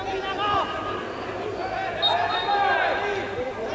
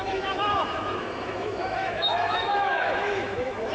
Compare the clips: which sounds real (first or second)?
first